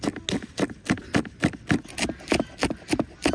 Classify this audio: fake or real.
real